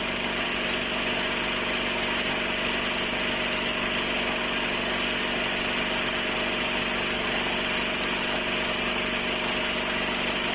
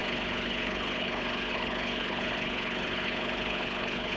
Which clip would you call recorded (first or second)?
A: first